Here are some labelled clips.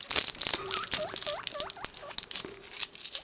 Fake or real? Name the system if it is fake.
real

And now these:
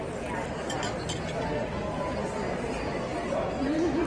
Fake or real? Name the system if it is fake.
real